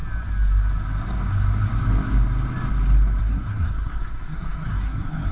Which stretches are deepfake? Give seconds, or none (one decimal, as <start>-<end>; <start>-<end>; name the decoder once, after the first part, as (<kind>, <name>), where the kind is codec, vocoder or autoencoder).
3.2-5.3 (codec, SNAC)